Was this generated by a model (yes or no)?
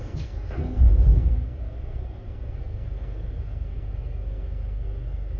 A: yes